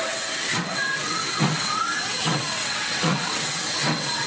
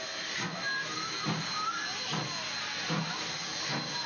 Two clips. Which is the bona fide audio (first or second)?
second